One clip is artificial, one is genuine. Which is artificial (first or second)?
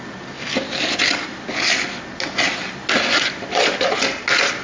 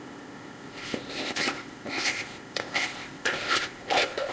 second